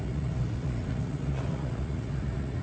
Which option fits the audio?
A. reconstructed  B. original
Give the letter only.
A